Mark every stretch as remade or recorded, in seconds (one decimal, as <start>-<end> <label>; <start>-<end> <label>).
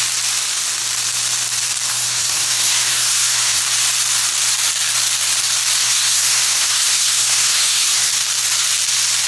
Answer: 0.0-1.9 recorded; 1.9-3.6 remade; 3.6-5.8 recorded; 5.8-8.1 remade; 8.1-9.3 recorded